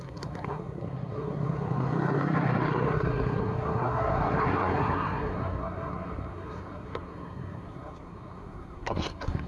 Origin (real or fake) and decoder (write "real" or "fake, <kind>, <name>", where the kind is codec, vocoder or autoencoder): fake, codec, SNAC